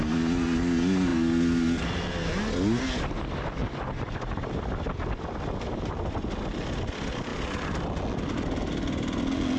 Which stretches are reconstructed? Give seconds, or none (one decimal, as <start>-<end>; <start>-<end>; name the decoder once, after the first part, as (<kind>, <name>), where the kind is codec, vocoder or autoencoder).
none